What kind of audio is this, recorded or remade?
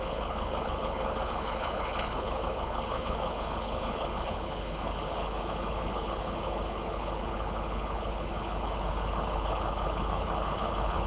remade